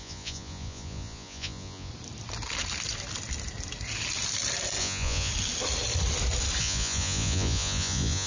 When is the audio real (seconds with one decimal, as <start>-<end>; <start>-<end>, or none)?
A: 1.9-4.8; 5.3-6.6